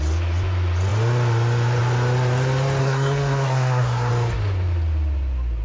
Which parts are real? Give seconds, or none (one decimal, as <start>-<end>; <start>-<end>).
0.0-2.8; 4.1-5.6